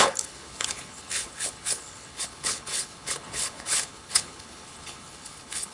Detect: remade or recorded remade